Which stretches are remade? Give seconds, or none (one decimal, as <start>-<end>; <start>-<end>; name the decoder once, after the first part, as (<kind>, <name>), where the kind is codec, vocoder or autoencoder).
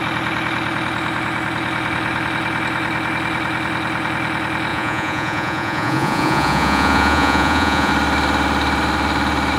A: 4.7-7.9 (vocoder, Vocos)